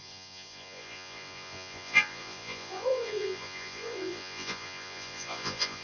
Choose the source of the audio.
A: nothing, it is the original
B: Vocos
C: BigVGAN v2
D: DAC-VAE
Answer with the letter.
B